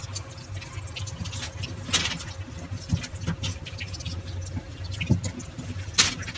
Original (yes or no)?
yes